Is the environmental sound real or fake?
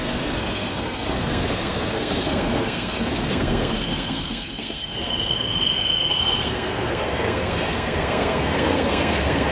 fake